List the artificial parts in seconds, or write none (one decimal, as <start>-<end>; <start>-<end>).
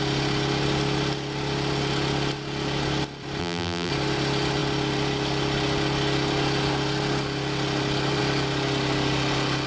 3.4-3.9